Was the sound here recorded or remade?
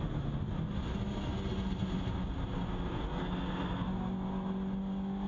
recorded